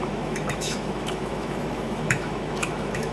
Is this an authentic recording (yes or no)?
no